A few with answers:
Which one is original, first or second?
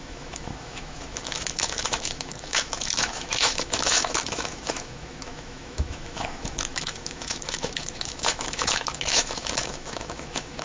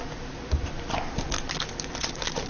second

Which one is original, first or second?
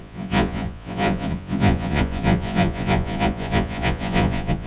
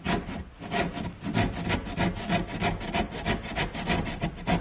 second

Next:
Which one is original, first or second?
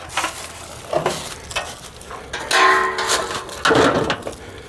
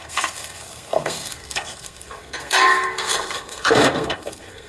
first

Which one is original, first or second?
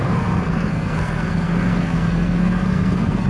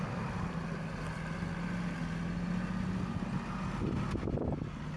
second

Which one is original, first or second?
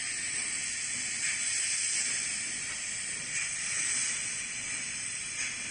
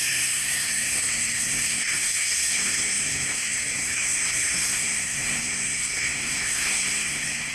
first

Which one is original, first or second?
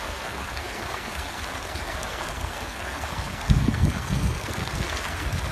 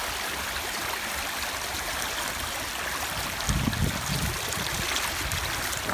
second